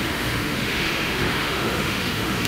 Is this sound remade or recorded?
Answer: remade